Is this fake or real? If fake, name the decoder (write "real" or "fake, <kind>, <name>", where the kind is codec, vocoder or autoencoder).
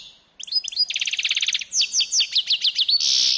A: real